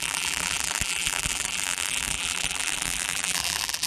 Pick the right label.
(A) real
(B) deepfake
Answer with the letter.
B